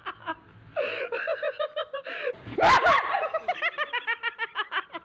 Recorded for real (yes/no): yes